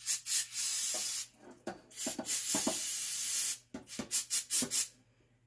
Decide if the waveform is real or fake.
real